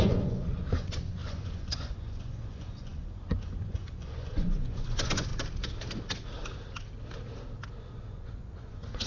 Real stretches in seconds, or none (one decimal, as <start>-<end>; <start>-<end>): 5.3-7.8